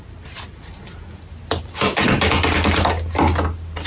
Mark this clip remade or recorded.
recorded